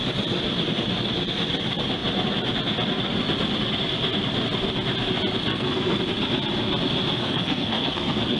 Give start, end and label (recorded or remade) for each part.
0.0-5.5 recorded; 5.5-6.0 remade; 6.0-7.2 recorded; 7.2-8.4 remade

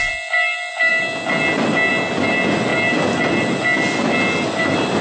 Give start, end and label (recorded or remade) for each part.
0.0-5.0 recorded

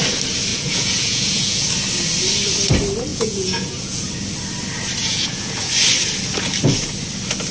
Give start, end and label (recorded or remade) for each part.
0.0-0.5 recorded; 0.5-1.7 remade; 1.7-3.1 recorded; 3.1-4.1 remade; 4.1-5.0 recorded; 5.0-5.7 remade; 5.7-7.5 recorded